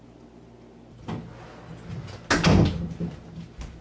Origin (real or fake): real